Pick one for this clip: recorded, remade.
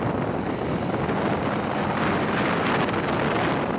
recorded